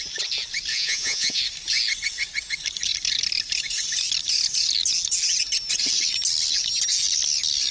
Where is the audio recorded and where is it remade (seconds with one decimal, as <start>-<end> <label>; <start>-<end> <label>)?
0.0-0.7 recorded; 0.7-1.4 remade; 1.4-7.7 recorded